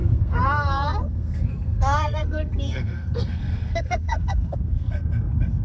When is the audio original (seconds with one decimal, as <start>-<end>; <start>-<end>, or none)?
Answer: none

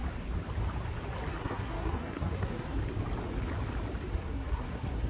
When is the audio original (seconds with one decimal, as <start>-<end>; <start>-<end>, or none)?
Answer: 0.0-1.3; 2.8-4.1